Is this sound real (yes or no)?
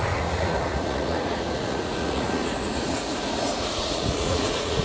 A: no